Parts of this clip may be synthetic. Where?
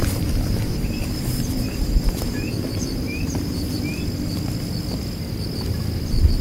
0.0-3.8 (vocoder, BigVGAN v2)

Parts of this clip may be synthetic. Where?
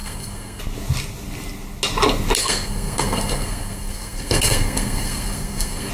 0.0-0.6 (codec, SNAC); 2.4-5.9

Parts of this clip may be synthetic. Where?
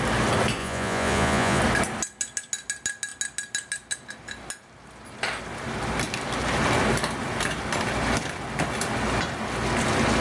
0.6-1.6 (vocoder, Vocos)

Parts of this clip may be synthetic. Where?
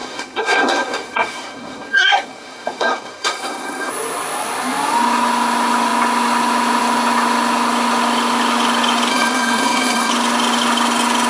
0.0-3.9 (codec, SNAC); 9.1-10.1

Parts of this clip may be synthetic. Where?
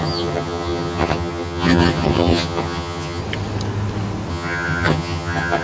0.0-3.2 (vocoder, HiFi-GAN); 4.3-5.6